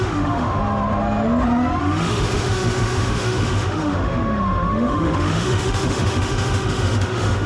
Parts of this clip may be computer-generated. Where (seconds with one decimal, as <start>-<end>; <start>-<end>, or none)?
0.0-0.6; 1.8-7.5